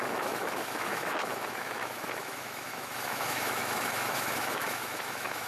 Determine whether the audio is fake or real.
fake